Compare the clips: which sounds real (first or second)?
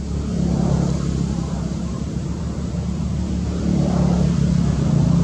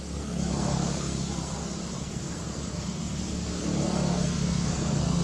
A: first